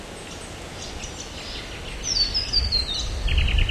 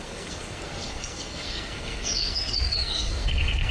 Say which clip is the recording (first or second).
first